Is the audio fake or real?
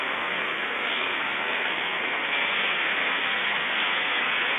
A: fake